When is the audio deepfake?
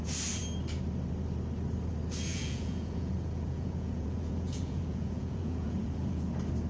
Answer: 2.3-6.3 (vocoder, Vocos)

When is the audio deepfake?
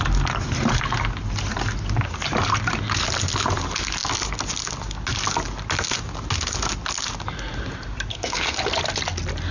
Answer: 8.1-8.6 (codec, SNAC)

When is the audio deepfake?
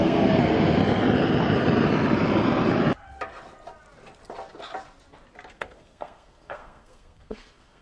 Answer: 0.0-0.8 (codec, SNAC); 5.5-7.8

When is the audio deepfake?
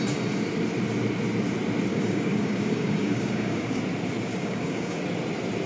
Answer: 1.9-3.8 (codec, DAC); 4.3-5.0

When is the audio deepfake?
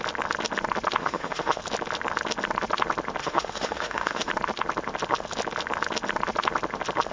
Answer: 1.0-1.6 (autoencoder, DAC-VAE); 3.2-4.3